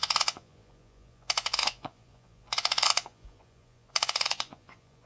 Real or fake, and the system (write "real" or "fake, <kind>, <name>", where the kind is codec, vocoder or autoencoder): fake, vocoder, Vocos